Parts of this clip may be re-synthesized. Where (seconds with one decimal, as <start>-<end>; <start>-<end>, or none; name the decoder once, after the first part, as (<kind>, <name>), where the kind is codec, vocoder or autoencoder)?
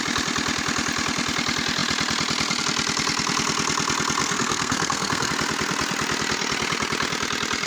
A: 4.2-5.3 (codec, SNAC)